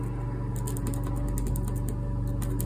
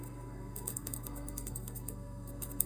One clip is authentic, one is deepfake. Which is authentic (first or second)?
first